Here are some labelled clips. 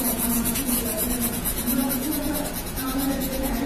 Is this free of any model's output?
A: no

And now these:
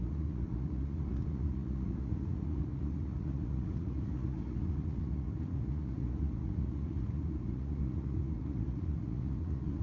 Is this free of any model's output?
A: no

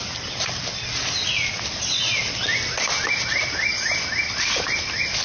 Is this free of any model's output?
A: yes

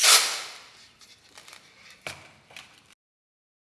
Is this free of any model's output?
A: yes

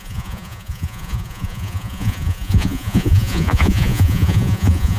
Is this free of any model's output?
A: no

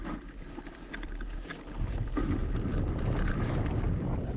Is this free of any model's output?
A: yes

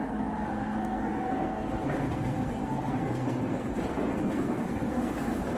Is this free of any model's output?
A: no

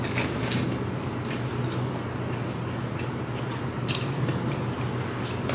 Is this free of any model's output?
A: yes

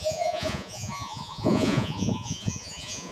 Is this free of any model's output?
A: no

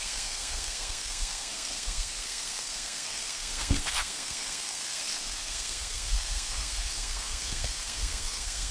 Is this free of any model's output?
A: no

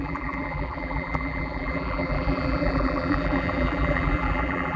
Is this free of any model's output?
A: no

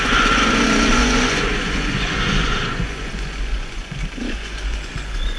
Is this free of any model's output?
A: no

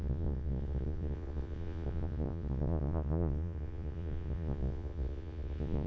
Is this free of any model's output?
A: no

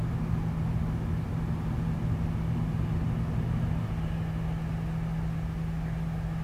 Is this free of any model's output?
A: yes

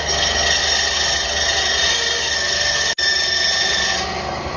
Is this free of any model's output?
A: yes